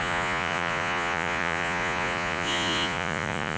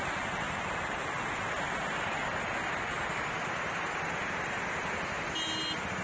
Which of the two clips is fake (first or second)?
first